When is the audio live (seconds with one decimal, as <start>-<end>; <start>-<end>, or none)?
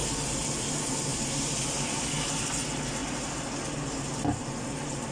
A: 0.0-5.1